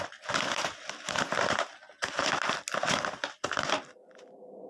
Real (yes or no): yes